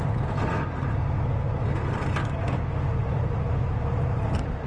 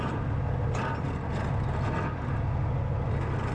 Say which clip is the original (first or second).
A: second